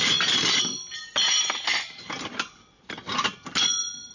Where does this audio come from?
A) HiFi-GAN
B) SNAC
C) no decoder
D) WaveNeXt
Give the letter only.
C